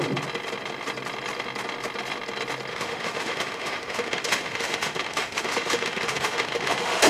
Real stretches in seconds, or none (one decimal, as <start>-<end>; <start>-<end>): 0.0-2.7